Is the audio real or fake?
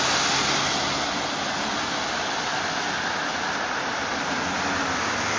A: real